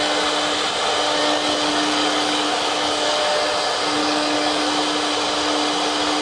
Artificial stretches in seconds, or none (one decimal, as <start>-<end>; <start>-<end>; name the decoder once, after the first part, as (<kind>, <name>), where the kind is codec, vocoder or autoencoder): 1.2-3.2 (codec, DAC); 4.0-4.6